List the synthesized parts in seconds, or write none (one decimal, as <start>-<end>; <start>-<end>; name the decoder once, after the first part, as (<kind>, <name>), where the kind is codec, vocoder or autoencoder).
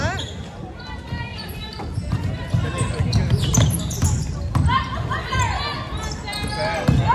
1.3-1.8 (vocoder, BigVGAN v2)